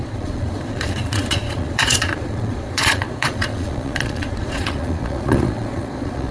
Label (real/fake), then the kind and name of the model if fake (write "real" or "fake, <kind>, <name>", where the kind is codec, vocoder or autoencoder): fake, vocoder, Vocos